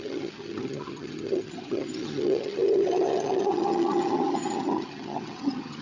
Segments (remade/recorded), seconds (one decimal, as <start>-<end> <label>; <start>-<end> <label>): 0.0-5.8 remade